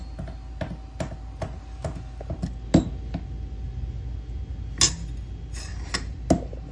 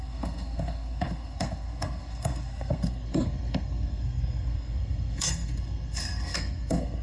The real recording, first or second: first